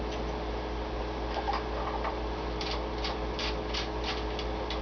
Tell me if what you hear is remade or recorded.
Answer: recorded